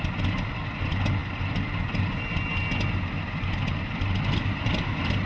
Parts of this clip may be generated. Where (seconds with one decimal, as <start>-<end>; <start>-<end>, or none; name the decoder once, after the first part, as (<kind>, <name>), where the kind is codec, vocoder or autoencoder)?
none

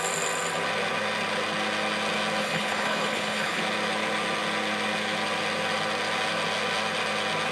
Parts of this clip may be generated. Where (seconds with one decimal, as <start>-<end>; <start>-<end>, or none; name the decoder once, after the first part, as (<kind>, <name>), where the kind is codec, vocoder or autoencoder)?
2.4-3.6 (codec, HILCodec)